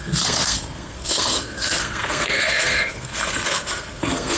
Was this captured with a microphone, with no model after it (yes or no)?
no